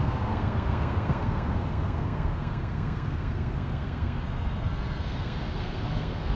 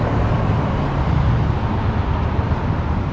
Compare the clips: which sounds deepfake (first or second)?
first